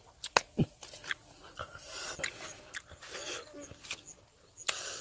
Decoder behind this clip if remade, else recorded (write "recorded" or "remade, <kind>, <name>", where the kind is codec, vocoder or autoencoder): recorded